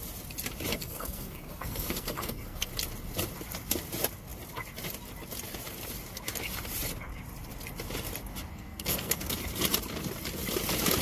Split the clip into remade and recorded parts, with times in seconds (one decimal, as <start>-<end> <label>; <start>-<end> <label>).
0.0-0.7 recorded; 0.7-2.7 remade; 2.7-8.5 recorded; 8.5-9.3 remade; 9.3-11.0 recorded